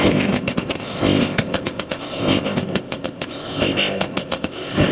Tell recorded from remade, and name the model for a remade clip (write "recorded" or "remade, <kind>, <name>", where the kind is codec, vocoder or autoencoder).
remade, codec, ZipCodec